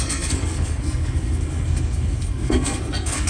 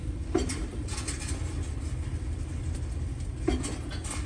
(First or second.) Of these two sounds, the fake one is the first